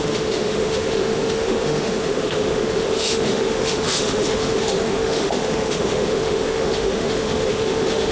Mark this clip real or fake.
fake